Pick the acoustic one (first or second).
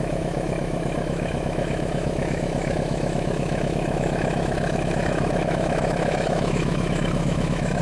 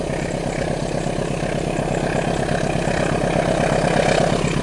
second